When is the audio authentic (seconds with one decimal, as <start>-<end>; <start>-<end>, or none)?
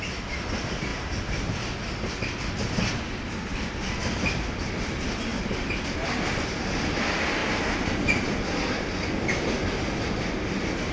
0.0-10.9